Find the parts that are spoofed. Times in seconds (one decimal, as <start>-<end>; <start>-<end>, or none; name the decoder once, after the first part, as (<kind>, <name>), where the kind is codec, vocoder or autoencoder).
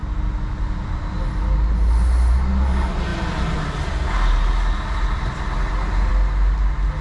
none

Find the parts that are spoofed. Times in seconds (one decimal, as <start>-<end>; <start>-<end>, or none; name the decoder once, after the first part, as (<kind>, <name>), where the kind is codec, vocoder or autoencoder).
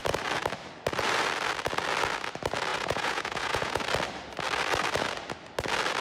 2.7-3.8 (vocoder, Vocos)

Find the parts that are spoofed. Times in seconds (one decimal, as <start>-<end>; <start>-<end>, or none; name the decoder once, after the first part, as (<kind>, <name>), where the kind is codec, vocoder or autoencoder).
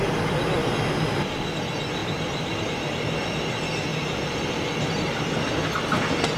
none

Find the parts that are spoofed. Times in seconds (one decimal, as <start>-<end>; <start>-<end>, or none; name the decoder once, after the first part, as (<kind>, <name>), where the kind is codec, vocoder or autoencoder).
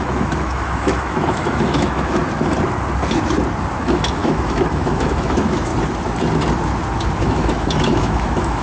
0.0-2.2 (autoencoder, DAC-VAE); 3.8-5.7; 7.2-8.6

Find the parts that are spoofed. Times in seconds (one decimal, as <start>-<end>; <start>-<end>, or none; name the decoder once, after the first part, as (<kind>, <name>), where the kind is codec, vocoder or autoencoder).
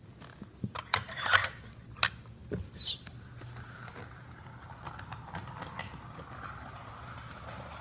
none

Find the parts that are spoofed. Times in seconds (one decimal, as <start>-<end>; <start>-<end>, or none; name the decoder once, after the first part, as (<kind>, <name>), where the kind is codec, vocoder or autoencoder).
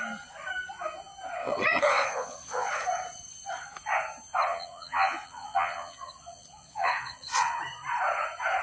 1.4-2.7 (vocoder, Vocos); 4.5-7.6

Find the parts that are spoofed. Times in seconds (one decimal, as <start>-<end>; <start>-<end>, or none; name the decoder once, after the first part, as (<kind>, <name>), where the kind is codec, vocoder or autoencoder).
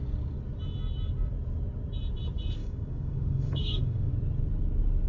2.6-4.1 (codec, DAC)